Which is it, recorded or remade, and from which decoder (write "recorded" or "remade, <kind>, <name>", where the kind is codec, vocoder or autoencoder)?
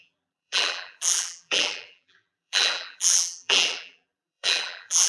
remade, vocoder, BigVGAN v2